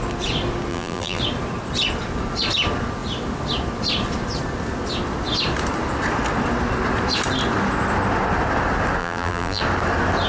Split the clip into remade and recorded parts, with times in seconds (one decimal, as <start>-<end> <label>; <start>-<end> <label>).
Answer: 0.0-0.7 recorded; 0.7-1.2 remade; 1.2-9.0 recorded; 9.0-9.6 remade; 9.6-10.3 recorded